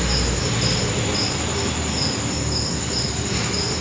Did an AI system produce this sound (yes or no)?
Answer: no